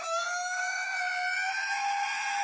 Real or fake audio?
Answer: real